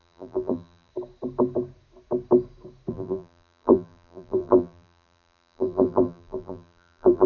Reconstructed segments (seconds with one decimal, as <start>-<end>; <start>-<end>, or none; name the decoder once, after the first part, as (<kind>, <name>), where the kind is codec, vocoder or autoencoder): 0.0-0.9 (vocoder, BigVGAN v2); 2.9-7.3